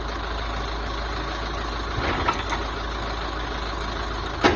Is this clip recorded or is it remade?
recorded